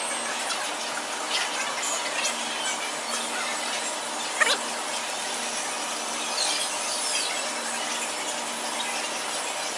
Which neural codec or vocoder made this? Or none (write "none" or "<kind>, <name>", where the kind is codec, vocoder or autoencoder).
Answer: none